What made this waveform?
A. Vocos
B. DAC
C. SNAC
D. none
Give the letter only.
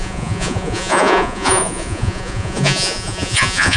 A